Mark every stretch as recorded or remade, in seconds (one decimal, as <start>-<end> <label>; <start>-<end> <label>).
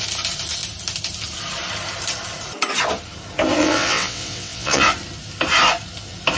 0.0-3.6 recorded; 3.6-4.8 remade; 4.8-6.4 recorded